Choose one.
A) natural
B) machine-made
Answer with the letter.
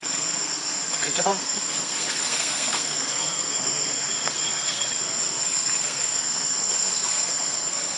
B